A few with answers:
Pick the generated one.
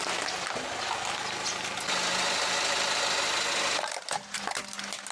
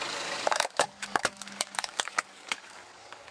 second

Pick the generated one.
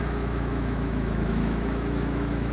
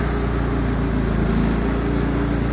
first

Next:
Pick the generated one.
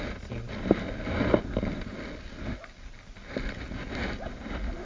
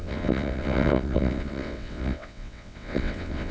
second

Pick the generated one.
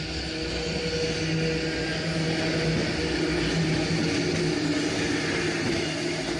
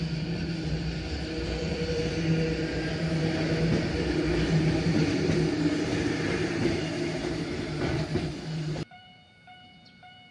second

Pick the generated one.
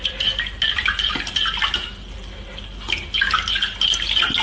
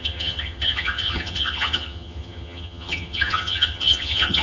second